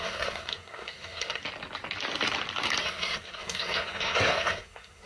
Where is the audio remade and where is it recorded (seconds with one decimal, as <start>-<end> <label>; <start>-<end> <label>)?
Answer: 0.0-1.4 remade; 1.4-2.8 recorded; 2.8-5.1 remade